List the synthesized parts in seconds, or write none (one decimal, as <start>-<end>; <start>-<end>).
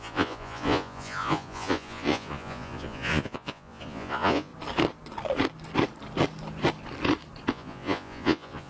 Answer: 0.0-4.5; 7.5-8.7